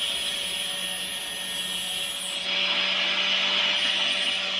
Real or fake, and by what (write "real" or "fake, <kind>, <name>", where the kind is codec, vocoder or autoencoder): real